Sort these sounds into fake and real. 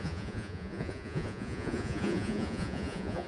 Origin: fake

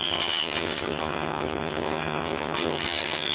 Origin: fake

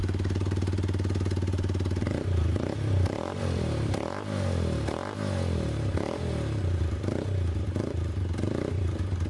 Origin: fake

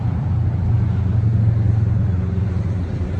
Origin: real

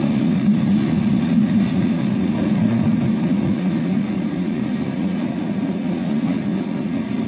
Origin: fake